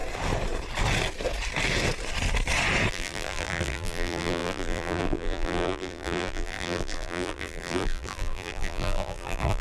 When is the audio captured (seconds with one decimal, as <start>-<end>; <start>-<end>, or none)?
0.0-2.9